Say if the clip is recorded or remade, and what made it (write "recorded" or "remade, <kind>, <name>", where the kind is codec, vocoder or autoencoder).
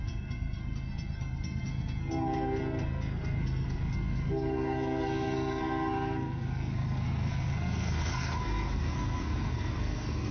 remade, codec, SNAC